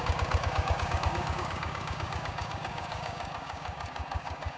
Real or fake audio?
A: fake